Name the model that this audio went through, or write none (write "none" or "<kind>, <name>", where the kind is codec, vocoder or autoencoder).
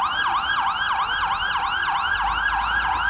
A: none